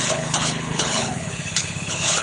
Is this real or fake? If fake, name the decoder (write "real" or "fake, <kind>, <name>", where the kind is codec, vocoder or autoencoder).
fake, codec, HILCodec